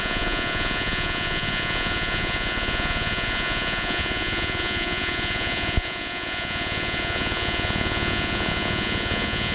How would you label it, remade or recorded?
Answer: remade